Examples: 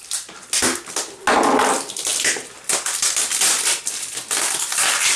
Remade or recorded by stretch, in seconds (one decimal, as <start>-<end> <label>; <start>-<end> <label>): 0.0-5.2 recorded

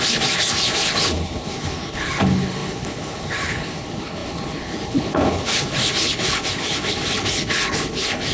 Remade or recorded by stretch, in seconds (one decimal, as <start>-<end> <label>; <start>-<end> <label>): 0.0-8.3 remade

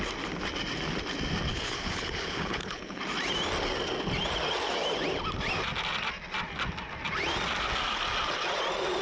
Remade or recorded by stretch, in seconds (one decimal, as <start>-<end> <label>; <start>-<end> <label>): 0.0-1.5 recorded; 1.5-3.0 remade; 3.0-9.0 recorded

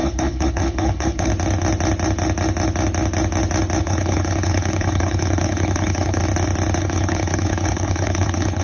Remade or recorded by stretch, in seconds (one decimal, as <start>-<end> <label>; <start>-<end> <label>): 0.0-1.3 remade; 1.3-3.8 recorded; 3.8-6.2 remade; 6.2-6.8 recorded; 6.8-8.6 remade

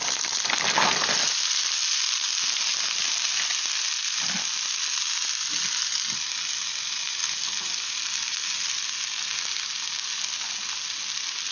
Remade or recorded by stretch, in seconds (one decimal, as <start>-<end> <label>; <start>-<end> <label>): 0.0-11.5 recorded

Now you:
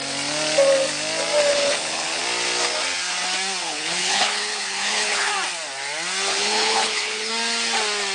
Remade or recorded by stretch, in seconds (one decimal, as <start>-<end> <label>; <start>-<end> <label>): 0.0-1.5 recorded; 1.5-2.2 remade; 2.2-3.6 recorded; 3.6-5.3 remade; 5.3-6.3 recorded; 6.3-7.3 remade; 7.3-8.1 recorded